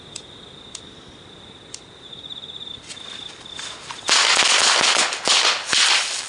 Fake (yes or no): no